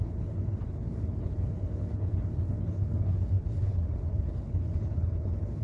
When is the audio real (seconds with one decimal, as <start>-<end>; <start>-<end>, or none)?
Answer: none